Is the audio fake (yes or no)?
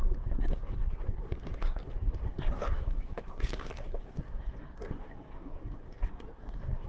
yes